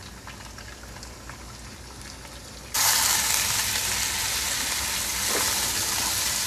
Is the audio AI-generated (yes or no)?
no